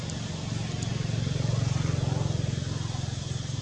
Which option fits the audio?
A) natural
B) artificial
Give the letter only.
A